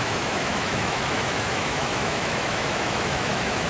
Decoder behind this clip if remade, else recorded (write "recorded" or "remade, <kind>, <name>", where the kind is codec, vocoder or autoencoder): remade, autoencoder, DAC-VAE